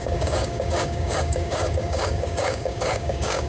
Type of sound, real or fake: fake